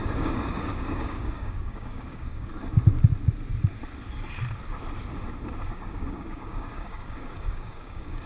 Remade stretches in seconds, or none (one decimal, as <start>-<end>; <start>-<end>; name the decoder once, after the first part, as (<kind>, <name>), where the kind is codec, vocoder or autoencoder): 0.0-2.5 (codec, DAC); 5.7-8.3